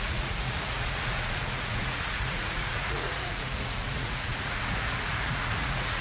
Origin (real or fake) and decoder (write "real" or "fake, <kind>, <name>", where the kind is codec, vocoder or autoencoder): fake, vocoder, Vocos